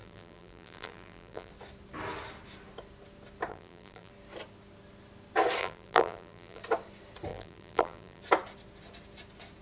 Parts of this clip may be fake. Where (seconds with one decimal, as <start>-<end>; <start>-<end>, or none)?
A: 0.0-1.5; 3.5-4.1; 5.6-6.6; 7.3-8.2